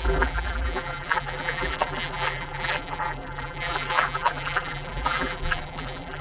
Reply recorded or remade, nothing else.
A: remade